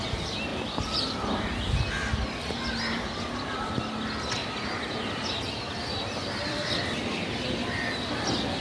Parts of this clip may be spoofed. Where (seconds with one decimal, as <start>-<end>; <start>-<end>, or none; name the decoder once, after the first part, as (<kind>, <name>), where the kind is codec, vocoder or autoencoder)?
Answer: none